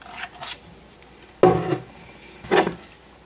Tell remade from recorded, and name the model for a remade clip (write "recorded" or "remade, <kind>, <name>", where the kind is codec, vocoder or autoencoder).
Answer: recorded